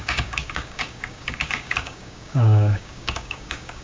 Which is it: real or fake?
fake